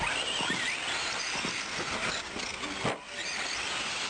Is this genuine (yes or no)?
yes